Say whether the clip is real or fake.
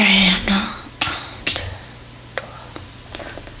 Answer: real